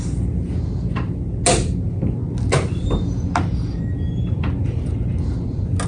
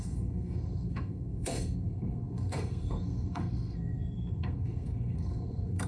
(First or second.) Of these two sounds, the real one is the first